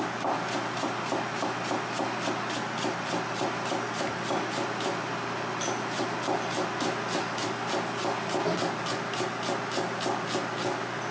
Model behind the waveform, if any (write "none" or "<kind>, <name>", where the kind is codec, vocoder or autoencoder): none